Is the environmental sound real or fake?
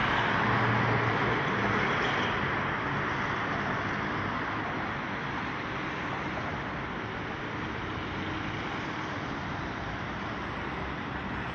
real